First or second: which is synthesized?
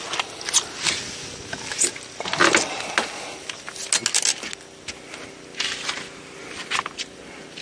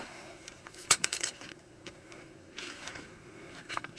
second